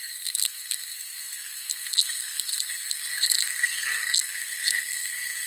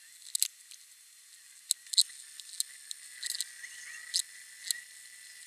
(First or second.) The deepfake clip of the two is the first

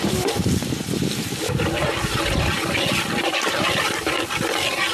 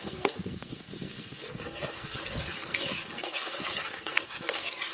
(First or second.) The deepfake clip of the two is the second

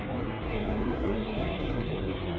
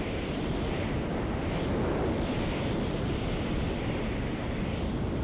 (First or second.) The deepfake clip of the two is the first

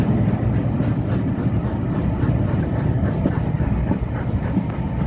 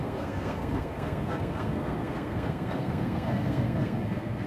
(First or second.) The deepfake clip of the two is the second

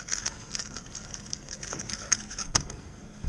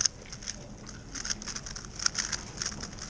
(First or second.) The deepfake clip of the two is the first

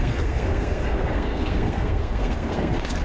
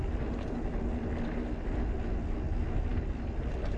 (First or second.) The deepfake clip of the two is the first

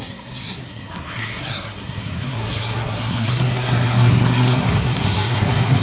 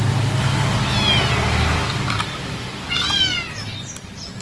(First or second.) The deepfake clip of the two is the first